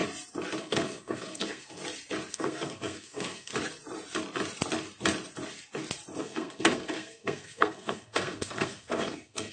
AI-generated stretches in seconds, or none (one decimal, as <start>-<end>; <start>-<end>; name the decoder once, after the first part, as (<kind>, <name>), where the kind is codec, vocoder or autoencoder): 0.6-1.8 (codec, SNAC); 2.3-3.5; 6.2-9.5

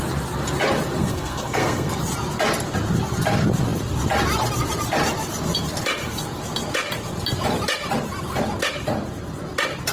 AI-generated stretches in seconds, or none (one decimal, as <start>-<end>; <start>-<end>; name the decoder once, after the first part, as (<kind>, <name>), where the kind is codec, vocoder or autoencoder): 1.0-2.0 (codec, SNAC)

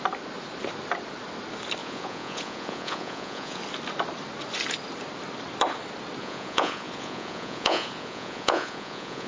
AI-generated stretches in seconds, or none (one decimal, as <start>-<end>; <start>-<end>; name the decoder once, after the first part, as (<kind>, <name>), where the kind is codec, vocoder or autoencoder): 1.8-3.6 (vocoder, Vocos); 6.2-9.3

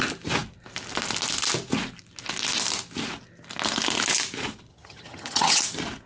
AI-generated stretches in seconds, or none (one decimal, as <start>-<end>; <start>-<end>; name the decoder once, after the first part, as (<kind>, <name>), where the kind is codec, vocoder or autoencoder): 4.7-5.6 (vocoder, HiFi-GAN)